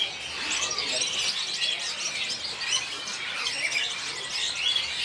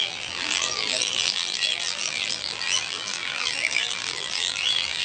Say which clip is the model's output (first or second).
second